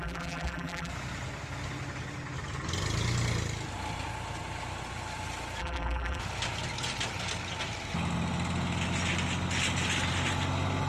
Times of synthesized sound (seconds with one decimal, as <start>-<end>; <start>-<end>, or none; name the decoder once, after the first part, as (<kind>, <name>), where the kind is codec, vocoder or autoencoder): 0.0-0.9 (vocoder, BigVGAN v2); 5.6-6.2